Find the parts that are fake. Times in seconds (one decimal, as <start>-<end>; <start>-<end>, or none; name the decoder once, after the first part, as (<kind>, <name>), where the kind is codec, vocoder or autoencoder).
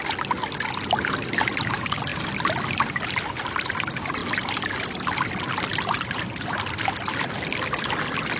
none